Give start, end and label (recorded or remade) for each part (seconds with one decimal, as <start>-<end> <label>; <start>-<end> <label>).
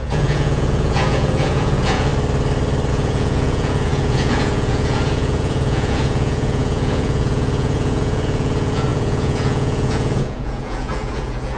0.0-2.1 remade; 2.1-2.9 recorded; 2.9-11.6 remade